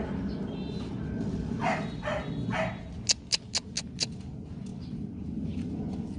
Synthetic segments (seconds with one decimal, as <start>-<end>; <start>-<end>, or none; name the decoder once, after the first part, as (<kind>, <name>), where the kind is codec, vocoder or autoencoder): none